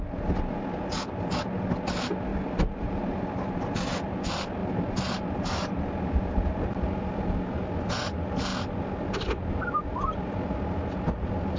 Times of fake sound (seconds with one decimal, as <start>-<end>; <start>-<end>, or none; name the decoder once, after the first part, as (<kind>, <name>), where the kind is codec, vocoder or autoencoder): 2.3-3.0 (vocoder, BigVGAN v2)